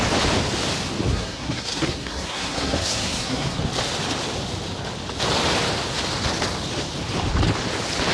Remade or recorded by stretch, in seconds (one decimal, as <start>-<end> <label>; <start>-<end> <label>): 0.0-1.1 recorded; 1.1-3.6 remade; 3.6-8.1 recorded